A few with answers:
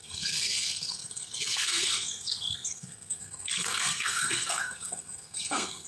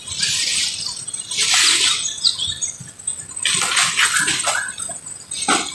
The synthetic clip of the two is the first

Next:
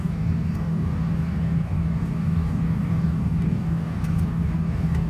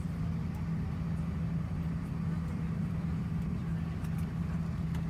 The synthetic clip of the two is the first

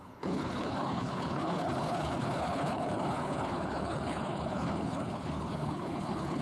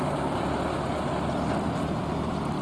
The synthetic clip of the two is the first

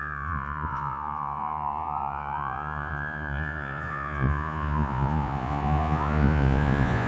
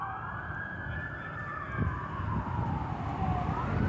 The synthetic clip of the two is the first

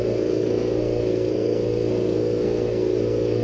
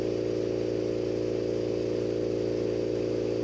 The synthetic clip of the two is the first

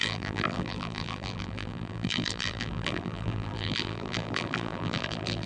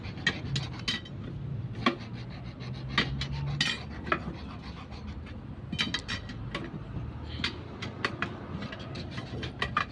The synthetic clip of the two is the first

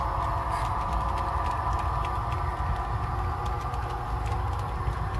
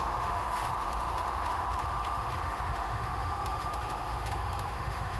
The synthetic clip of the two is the second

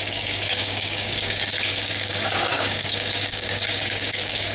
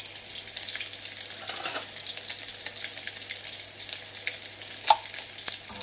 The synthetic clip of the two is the first